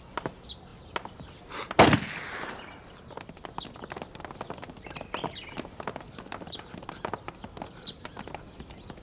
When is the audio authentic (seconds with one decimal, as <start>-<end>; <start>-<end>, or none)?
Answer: 0.0-9.0